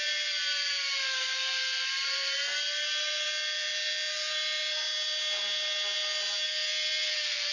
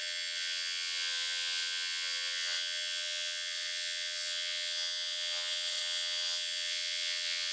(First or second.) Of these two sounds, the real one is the first